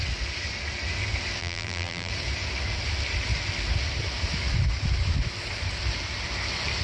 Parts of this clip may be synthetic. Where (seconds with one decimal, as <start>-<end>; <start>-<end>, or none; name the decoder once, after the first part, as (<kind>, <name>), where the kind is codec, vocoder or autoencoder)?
1.4-2.1 (vocoder, BigVGAN v2)